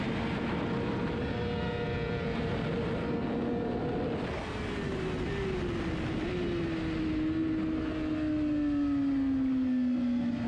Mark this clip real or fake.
real